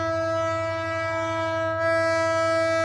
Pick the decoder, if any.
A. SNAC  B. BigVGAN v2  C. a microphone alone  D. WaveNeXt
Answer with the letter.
C